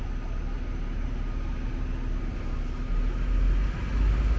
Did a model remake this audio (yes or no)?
no